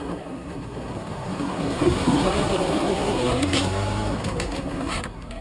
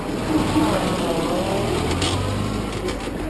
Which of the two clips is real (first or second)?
second